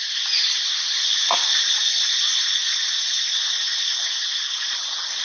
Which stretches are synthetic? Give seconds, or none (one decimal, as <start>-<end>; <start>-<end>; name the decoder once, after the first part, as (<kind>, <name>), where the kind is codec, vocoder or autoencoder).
none